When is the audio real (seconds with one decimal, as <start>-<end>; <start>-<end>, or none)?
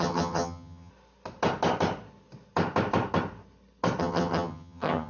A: 0.9-4.0